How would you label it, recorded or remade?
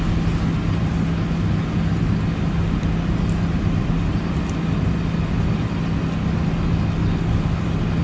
recorded